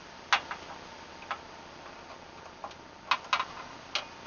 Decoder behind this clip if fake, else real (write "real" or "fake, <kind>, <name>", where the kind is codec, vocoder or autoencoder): real